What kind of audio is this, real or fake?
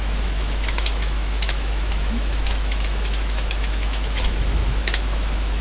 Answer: fake